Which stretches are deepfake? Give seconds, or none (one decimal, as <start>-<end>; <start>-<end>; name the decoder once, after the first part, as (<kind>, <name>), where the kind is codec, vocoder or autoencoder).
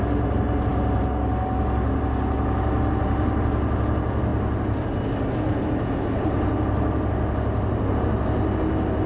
none